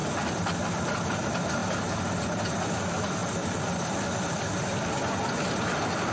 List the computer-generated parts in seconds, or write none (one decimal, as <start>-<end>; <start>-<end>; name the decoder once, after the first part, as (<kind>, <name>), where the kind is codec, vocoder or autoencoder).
0.5-1.6 (vocoder, BigVGAN v2); 2.7-6.1